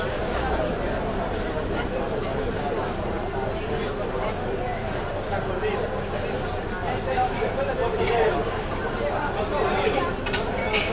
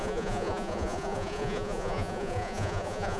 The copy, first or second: second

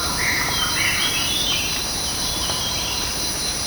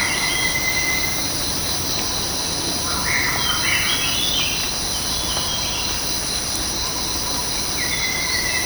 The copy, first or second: first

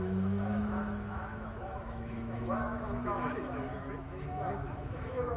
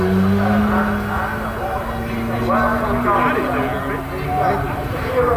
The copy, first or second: first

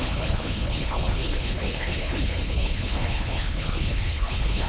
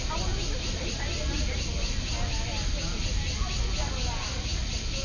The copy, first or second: first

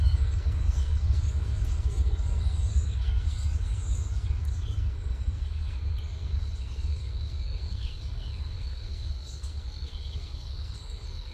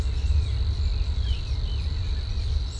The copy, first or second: first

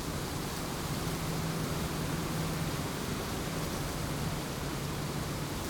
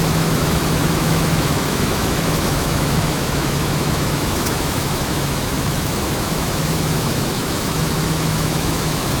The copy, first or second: second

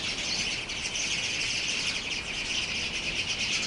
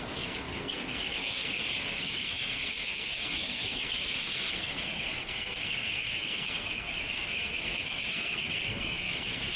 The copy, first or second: second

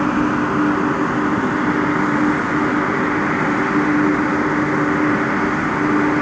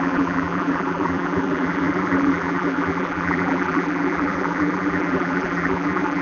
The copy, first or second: second